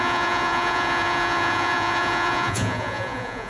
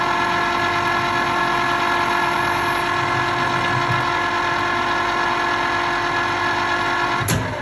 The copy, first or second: first